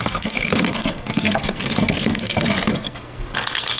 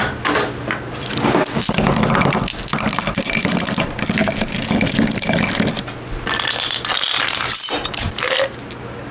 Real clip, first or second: second